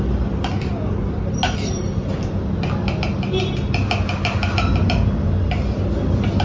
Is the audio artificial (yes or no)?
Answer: no